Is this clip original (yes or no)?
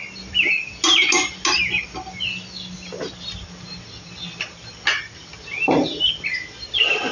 yes